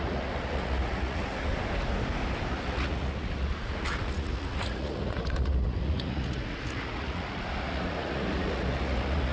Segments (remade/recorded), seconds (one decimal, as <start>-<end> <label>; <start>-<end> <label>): 0.0-1.5 remade; 1.5-2.5 recorded; 2.5-9.3 remade